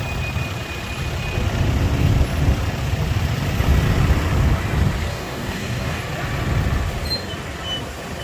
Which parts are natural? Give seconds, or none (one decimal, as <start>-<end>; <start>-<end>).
0.0-5.1; 6.0-8.2